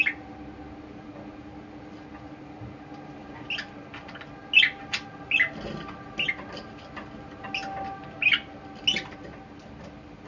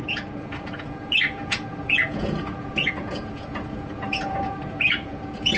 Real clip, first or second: first